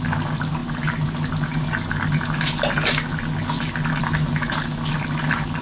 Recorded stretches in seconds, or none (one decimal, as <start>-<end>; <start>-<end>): 0.0-5.6